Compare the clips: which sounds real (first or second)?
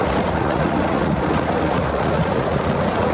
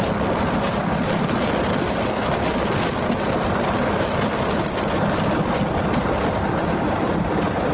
second